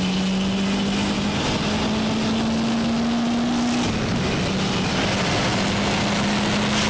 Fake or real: real